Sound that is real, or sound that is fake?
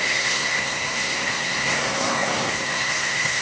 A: fake